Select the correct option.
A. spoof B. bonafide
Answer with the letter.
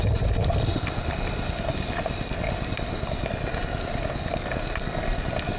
B